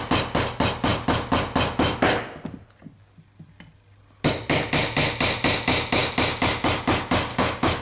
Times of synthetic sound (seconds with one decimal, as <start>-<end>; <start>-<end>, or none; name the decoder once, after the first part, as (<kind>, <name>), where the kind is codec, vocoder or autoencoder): 7.3-7.8 (codec, DAC)